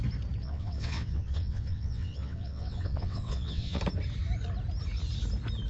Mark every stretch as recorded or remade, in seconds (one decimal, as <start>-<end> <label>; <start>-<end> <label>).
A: 0.0-0.4 recorded; 0.4-3.8 remade; 3.8-5.7 recorded